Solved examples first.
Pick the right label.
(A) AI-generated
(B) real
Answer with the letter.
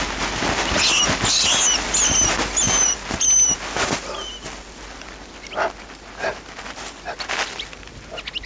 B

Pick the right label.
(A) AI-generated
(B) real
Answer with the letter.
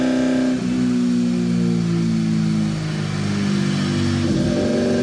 B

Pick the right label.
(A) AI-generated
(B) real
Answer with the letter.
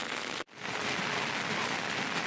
B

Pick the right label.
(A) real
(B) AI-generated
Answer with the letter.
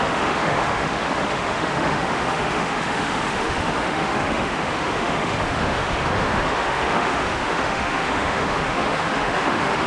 B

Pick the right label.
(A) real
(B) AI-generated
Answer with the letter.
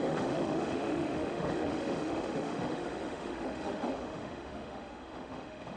B